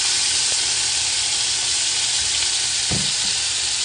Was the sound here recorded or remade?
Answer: recorded